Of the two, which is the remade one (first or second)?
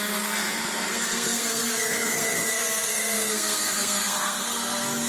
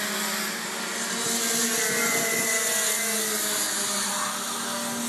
first